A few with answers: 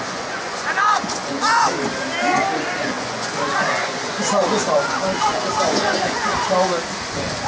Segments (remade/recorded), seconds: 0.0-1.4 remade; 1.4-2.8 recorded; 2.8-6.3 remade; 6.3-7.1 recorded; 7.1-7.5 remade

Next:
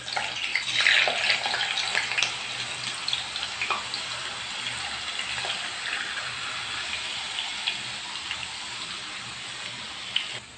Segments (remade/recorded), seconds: 0.0-10.6 recorded

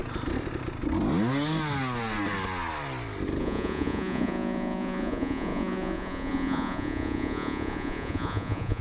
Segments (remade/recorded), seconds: 0.0-3.4 recorded; 3.4-8.8 remade